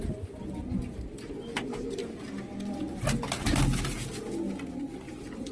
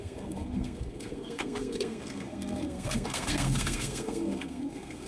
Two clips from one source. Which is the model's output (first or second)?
second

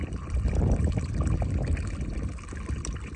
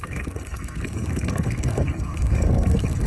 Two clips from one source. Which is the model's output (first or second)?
second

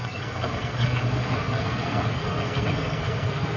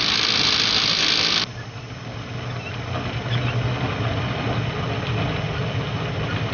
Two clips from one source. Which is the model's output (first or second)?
first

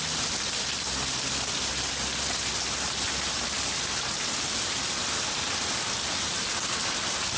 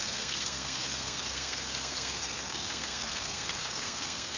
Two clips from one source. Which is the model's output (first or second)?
second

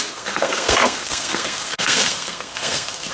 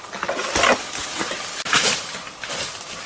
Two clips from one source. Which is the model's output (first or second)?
first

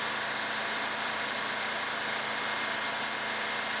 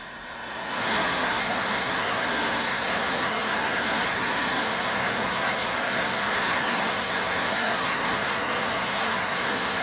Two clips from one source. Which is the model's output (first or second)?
second